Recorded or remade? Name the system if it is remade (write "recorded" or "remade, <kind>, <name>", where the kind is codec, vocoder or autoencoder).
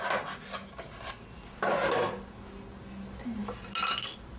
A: recorded